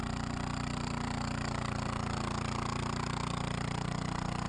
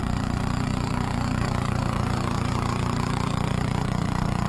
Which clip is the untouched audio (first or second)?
first